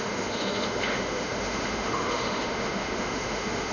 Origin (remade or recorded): remade